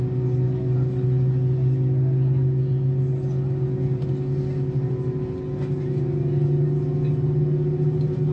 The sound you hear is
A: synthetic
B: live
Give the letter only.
B